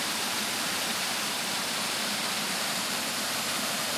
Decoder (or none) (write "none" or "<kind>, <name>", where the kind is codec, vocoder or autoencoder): vocoder, BigVGAN v2